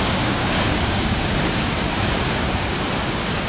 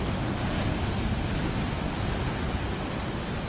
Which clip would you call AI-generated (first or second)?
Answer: first